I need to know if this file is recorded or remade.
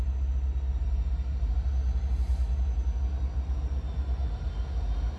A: recorded